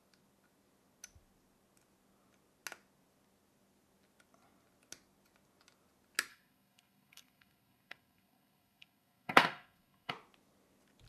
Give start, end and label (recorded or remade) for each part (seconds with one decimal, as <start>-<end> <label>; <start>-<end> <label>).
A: 0.0-6.3 recorded; 6.3-10.1 remade; 10.1-11.1 recorded